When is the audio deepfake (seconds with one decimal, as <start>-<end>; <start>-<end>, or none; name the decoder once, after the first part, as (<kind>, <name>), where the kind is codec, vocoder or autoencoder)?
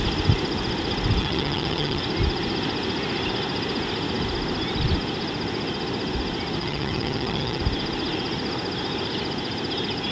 1.2-2.0 (vocoder, HiFi-GAN); 6.6-7.6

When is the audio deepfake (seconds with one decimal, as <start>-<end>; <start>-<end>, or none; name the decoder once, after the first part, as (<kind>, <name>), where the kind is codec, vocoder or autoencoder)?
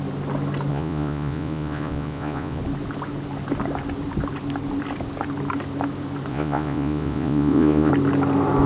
0.7-2.6 (vocoder, Vocos); 6.3-7.9